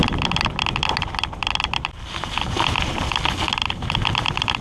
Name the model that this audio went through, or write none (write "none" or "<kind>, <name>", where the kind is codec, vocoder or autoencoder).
none